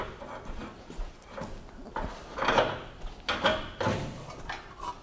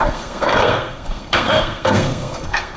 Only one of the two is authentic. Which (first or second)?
first